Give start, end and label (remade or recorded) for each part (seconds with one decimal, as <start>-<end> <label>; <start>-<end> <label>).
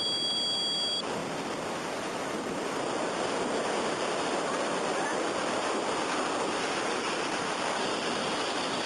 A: 0.0-8.9 recorded